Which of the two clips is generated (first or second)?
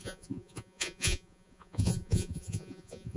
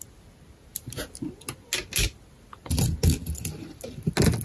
first